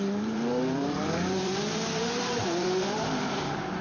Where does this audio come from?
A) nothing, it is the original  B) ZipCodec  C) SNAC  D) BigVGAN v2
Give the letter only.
D